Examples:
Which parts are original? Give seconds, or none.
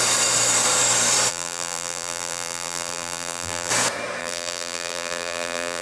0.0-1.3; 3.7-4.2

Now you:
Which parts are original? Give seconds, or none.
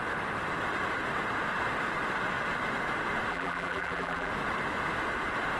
0.0-3.3; 4.3-5.6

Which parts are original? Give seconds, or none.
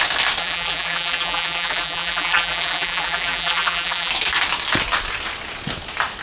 0.0-0.4; 4.1-6.2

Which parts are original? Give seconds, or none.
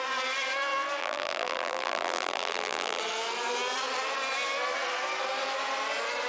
0.0-1.0; 3.0-6.3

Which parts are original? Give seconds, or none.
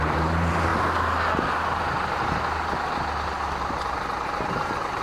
0.7-3.6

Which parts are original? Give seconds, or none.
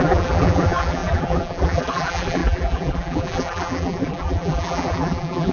none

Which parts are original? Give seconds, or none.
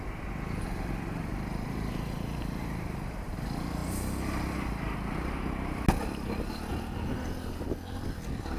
3.8-7.2